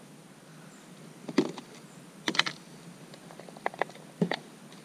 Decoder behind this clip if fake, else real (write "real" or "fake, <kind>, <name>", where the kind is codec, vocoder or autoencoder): real